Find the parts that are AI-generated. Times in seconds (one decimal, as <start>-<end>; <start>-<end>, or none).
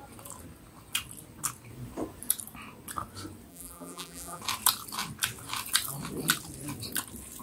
3.5-4.4